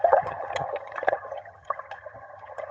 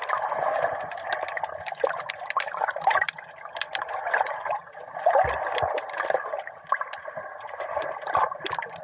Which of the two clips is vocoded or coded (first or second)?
first